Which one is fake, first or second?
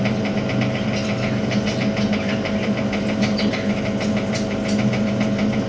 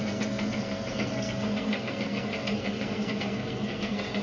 second